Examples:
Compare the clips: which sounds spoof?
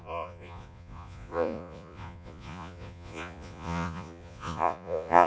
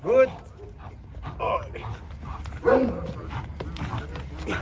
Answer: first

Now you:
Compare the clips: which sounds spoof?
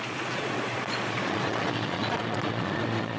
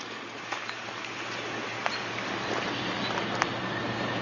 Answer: first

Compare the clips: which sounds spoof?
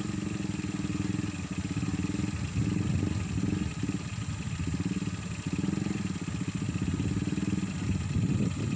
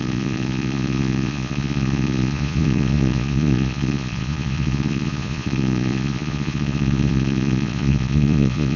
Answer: second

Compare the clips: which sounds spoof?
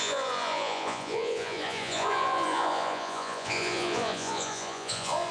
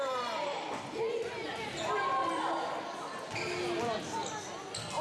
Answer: first